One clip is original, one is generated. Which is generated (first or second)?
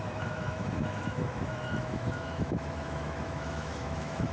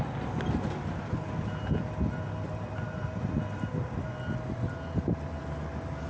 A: first